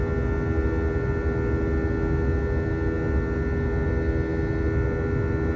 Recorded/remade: recorded